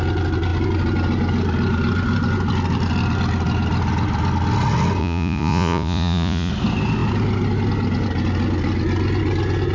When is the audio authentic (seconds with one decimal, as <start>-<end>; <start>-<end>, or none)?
0.0-5.0; 6.5-9.7